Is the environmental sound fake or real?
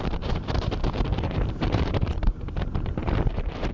fake